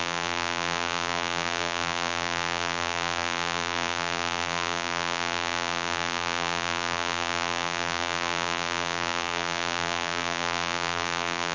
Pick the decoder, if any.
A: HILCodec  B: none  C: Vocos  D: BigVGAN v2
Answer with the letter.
D